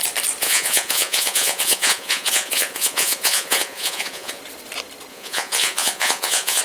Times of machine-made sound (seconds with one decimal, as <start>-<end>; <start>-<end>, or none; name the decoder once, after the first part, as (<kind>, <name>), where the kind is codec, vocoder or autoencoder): 0.4-4.4 (vocoder, Vocos); 5.1-6.6